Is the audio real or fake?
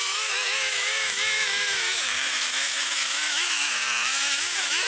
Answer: fake